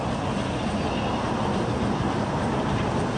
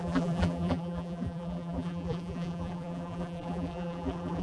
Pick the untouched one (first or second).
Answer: first